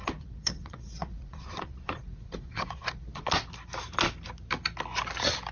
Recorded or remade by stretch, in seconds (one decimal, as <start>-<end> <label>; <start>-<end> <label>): 0.0-3.3 remade; 3.3-5.5 recorded